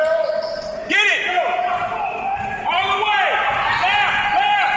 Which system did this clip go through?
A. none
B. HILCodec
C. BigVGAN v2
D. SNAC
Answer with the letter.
A